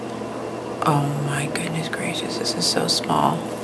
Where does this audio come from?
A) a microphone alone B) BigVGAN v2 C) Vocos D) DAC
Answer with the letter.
A